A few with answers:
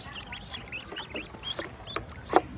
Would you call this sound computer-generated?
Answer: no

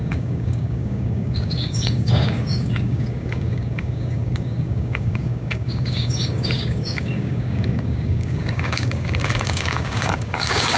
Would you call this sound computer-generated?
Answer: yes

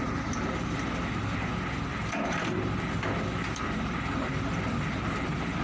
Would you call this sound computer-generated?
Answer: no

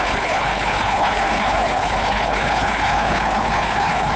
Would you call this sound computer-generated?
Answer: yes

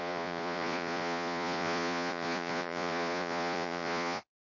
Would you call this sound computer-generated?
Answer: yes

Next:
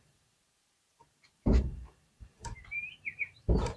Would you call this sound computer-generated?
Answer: yes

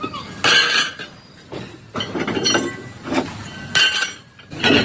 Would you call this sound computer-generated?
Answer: no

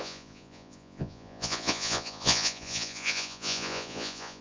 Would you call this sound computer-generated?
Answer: yes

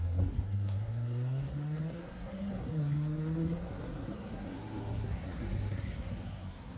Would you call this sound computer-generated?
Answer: yes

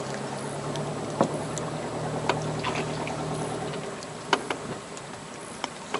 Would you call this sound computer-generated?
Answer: no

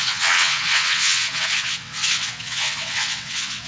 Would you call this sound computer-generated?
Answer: yes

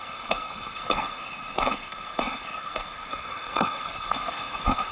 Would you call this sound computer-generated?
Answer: yes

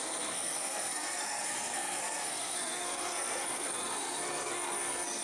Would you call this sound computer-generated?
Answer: yes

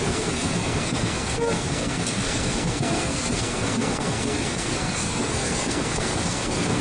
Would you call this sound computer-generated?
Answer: yes